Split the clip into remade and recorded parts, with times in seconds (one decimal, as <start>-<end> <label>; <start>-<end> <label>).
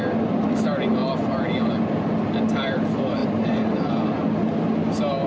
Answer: 0.0-3.2 recorded; 3.2-3.7 remade; 3.7-5.3 recorded